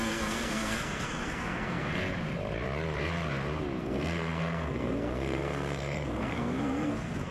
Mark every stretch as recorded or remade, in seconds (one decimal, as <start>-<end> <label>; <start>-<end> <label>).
0.0-2.0 remade; 2.0-3.8 recorded; 3.8-7.3 remade